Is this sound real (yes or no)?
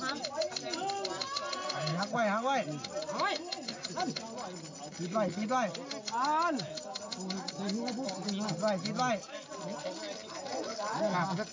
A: yes